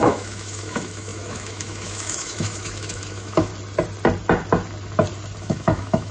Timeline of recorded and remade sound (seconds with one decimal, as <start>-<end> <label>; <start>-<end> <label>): 0.0-3.5 remade; 3.5-5.4 recorded; 5.4-6.1 remade